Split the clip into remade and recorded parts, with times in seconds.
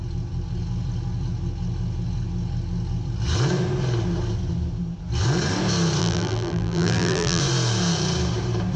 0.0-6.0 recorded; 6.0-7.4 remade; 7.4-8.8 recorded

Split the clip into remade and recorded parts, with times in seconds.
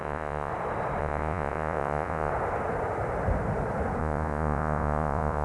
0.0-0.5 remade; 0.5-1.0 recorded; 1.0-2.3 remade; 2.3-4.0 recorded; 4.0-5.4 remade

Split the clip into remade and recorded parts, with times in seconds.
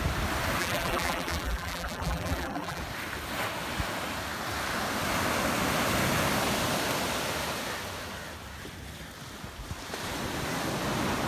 0.0-0.6 recorded; 0.6-2.8 remade; 2.8-11.3 recorded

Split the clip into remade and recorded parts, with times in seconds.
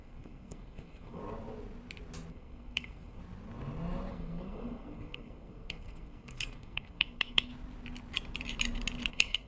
0.0-1.2 remade; 1.2-2.3 recorded; 2.3-3.2 remade; 3.2-4.1 recorded; 4.1-7.5 remade; 7.5-9.1 recorded; 9.1-9.5 remade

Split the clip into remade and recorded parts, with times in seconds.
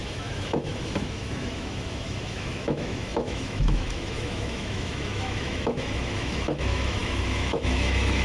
0.0-8.2 remade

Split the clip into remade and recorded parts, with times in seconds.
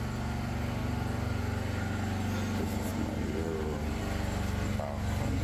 0.0-0.8 recorded; 0.8-1.4 remade; 1.4-5.4 recorded